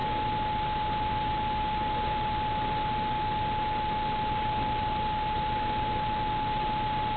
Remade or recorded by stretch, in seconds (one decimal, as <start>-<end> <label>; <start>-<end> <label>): 0.0-7.2 recorded